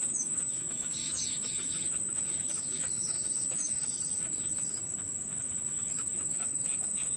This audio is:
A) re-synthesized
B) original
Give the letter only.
A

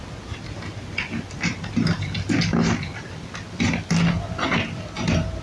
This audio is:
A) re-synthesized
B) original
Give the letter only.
B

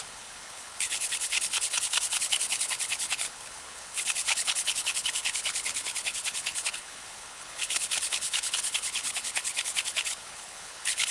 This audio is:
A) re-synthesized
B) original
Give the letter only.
A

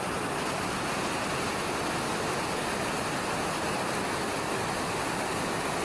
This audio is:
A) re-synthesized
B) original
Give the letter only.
B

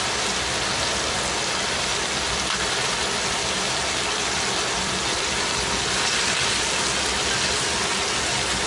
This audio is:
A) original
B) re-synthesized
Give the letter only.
A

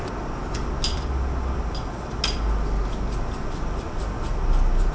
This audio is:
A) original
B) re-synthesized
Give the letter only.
A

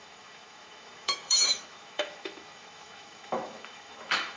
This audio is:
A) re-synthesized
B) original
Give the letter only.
A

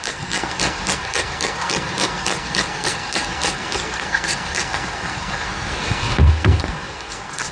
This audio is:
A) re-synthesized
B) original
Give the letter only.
A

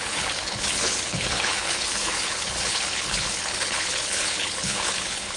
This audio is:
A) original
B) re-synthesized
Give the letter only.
B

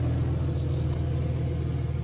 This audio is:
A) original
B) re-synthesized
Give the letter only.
A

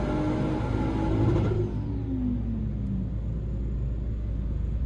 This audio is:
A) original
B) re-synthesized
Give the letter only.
A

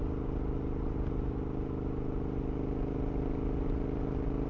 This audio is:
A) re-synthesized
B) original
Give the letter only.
B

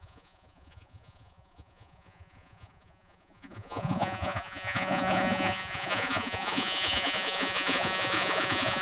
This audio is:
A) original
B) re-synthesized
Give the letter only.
B